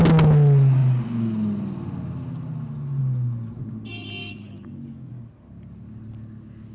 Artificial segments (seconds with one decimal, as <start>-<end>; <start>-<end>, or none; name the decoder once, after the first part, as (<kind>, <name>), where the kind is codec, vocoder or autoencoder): 4.2-5.1 (codec, DAC)